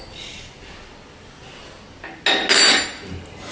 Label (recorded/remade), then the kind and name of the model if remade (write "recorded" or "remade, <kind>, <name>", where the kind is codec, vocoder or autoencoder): recorded